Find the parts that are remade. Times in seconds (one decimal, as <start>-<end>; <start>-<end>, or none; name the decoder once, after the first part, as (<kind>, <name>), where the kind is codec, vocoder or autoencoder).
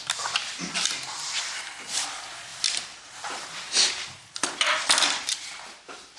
none